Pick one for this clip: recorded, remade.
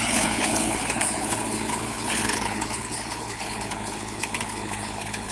remade